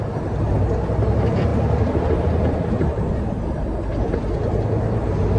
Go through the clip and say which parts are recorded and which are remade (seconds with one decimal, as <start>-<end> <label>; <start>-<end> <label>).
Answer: 0.0-5.4 recorded